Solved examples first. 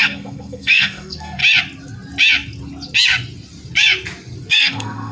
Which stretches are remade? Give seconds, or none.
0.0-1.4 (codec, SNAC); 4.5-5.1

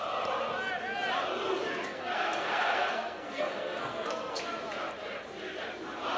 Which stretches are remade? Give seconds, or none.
1.7-4.4 (codec, SNAC)